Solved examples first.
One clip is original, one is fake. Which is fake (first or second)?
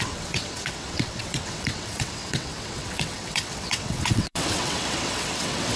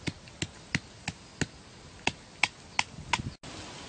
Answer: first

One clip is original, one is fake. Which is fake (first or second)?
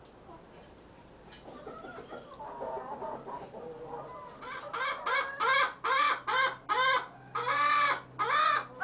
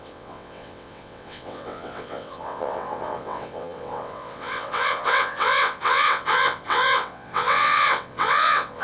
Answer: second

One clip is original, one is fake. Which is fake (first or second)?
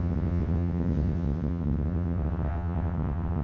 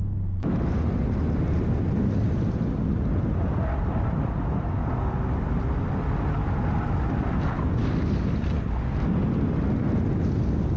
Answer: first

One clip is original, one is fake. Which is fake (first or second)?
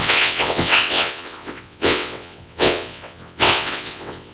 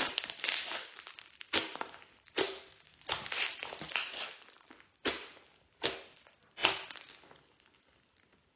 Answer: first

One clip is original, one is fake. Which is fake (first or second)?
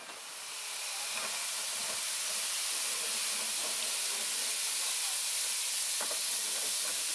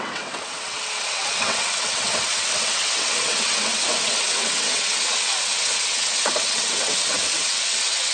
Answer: second